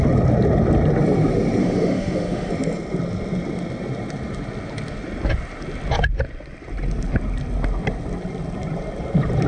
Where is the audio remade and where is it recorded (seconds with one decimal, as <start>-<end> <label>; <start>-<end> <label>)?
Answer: 0.0-1.6 recorded; 1.6-2.5 remade; 2.5-9.5 recorded